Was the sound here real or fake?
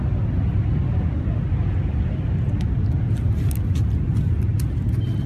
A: real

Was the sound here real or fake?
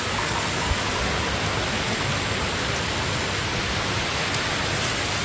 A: real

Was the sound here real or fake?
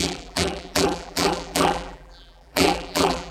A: fake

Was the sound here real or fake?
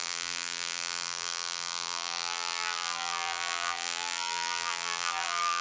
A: fake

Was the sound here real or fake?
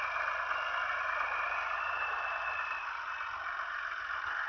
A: real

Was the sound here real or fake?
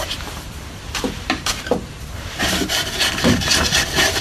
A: fake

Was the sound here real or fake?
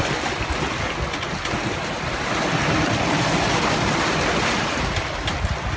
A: real